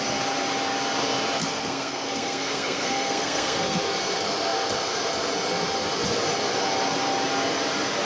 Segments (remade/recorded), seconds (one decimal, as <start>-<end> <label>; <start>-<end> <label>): 0.0-1.4 recorded; 1.4-3.8 remade; 3.8-8.1 recorded